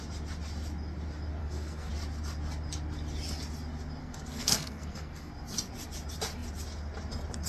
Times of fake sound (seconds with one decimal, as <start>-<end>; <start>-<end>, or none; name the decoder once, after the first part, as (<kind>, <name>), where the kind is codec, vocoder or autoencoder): 1.4-1.9 (codec, SNAC); 4.0-5.3